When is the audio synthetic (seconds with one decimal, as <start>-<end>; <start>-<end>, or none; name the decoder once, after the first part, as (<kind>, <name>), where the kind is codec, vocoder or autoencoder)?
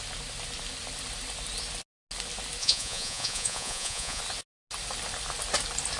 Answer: 2.6-4.2 (vocoder, Vocos)